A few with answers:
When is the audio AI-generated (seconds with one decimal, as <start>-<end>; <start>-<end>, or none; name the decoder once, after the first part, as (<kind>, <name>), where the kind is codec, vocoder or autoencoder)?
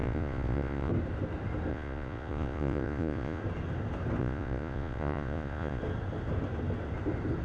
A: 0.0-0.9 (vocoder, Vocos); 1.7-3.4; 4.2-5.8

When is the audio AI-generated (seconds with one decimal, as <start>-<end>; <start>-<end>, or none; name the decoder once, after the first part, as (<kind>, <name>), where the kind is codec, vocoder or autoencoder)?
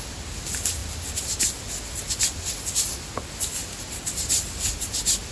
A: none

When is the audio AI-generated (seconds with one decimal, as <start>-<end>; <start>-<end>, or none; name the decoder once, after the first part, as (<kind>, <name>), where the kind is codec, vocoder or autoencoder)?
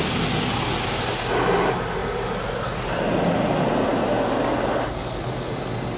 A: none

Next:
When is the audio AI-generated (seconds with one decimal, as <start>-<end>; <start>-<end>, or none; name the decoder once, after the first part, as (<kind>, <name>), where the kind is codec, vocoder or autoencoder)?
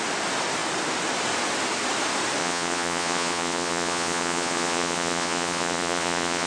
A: 2.4-6.5 (vocoder, Vocos)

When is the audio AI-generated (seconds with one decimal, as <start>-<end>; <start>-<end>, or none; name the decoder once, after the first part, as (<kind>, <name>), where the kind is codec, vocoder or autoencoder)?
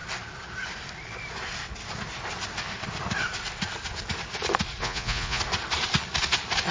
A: 4.8-5.4 (vocoder, Vocos)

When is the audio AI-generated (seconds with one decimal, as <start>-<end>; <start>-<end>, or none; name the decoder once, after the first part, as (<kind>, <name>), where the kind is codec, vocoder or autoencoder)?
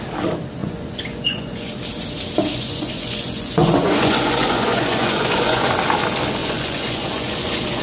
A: 0.6-1.7 (vocoder, Vocos); 2.5-5.7; 6.4-7.8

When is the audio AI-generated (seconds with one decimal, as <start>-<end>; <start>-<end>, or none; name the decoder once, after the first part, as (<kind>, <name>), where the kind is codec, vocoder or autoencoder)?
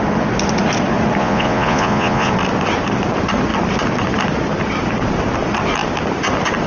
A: 1.2-2.3 (vocoder, Vocos)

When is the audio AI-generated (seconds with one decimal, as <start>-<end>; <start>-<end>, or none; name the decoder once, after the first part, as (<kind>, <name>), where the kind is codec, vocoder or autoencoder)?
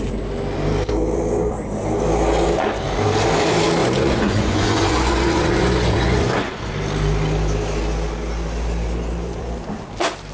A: 3.8-6.7 (vocoder, Vocos)